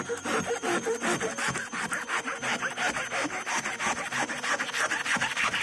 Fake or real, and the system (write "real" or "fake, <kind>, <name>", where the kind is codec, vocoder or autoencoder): real